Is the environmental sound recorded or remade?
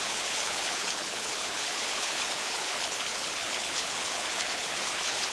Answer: remade